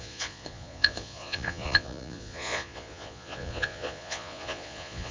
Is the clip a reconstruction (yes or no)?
yes